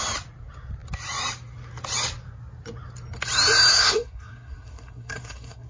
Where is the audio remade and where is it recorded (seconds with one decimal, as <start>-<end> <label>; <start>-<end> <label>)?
0.0-3.7 recorded; 3.7-5.7 remade